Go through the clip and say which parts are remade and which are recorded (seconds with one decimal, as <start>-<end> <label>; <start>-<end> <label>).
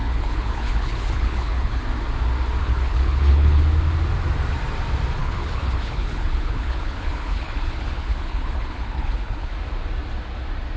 0.0-1.8 remade; 1.8-2.6 recorded; 2.6-3.6 remade; 3.6-5.2 recorded; 5.2-9.5 remade; 9.5-10.8 recorded